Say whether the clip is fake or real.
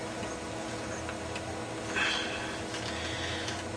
real